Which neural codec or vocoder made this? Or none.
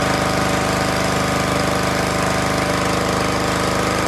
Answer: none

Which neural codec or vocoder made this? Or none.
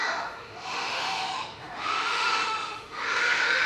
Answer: autoencoder, DAC-VAE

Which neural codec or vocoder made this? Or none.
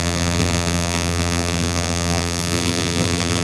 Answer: vocoder, BigVGAN v2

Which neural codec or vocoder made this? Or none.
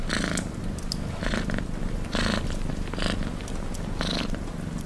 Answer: none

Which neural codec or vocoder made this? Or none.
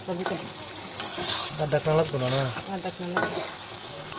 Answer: none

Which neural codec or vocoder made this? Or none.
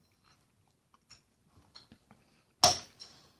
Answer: none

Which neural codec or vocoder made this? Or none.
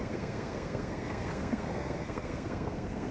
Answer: codec, SNAC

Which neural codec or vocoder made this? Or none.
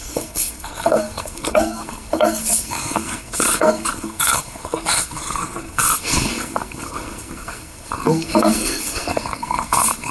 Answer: codec, SNAC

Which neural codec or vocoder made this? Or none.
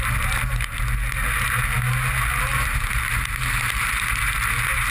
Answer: none